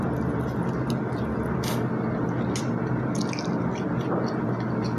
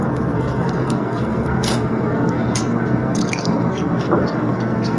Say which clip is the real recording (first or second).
first